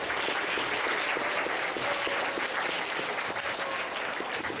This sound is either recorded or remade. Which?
recorded